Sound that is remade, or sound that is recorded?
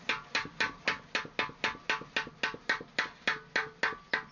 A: recorded